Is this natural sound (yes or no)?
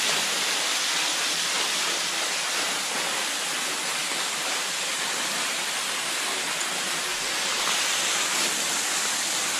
yes